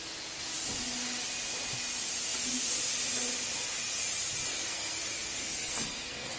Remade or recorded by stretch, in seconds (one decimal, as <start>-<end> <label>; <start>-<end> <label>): 0.0-4.5 recorded; 4.5-6.4 remade